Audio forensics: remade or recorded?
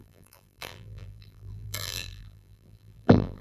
remade